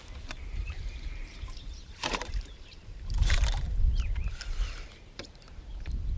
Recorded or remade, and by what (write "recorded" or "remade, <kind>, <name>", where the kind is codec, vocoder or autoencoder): remade, vocoder, BigVGAN v2